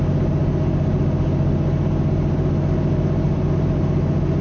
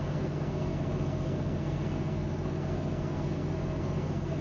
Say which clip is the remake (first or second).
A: second